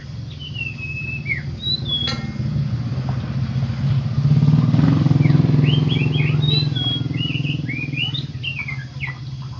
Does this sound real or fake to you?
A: real